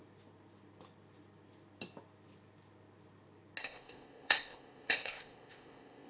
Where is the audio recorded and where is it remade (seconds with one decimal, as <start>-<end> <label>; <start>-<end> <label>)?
0.0-3.6 recorded; 3.6-6.1 remade